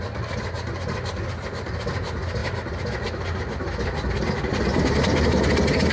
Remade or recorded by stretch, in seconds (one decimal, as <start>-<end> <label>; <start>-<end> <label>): 0.0-5.9 recorded